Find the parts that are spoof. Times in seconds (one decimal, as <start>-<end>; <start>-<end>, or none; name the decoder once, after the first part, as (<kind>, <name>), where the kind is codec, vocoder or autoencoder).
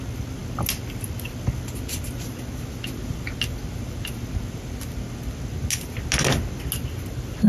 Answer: none